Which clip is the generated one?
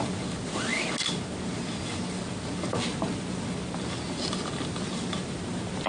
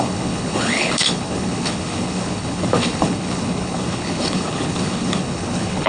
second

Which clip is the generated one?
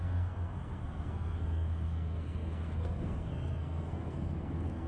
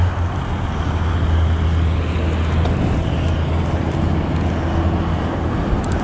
first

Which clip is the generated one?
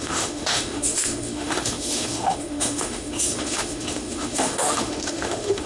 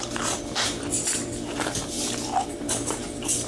first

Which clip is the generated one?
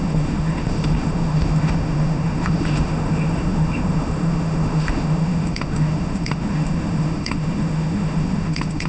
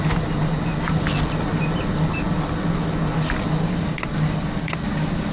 first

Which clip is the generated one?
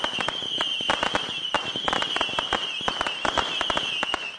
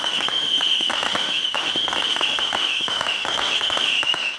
second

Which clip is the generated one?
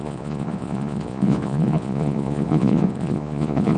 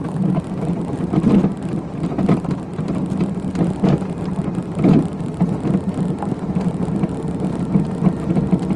first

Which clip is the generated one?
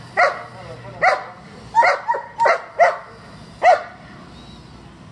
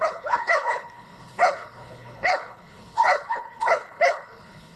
second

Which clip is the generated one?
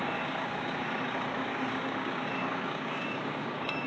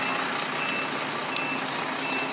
first